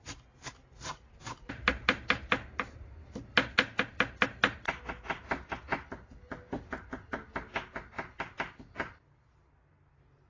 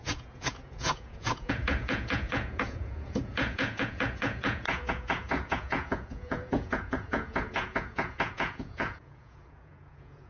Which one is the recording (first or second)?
first